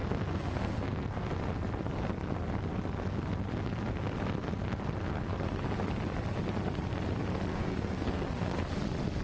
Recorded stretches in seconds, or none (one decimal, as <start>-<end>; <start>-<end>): 1.3-7.5; 8.7-9.2